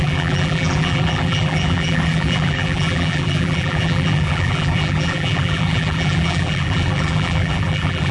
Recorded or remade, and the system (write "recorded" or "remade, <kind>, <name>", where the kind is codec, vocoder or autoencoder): remade, vocoder, BigVGAN v2